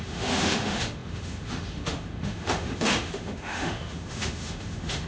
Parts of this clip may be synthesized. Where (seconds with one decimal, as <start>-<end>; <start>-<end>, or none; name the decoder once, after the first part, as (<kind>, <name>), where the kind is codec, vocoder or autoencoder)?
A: 0.0-5.1 (autoencoder, DAC-VAE)